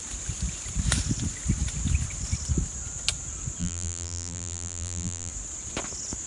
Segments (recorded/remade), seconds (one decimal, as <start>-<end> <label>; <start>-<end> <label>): 0.0-3.6 recorded; 3.6-5.3 remade; 5.3-6.3 recorded